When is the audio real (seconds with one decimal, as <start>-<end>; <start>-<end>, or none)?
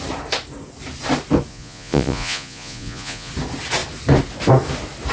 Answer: 0.0-1.5; 3.3-5.1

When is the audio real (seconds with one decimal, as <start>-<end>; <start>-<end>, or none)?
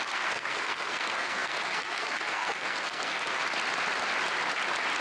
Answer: 3.4-5.0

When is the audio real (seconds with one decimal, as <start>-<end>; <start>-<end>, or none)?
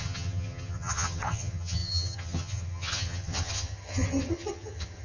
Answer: none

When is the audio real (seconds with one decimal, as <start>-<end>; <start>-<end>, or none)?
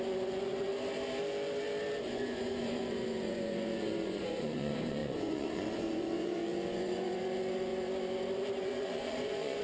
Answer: 0.7-2.1; 7.7-8.6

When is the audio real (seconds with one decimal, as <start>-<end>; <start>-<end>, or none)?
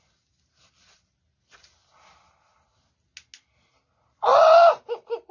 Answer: 0.0-5.3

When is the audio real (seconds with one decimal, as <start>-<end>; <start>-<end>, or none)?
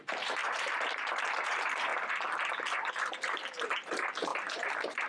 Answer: 0.4-1.2; 1.9-2.9